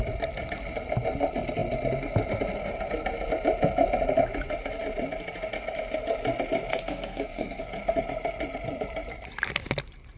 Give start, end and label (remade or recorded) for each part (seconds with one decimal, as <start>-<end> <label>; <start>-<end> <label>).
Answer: 0.0-6.7 recorded; 6.7-7.6 remade; 7.6-10.2 recorded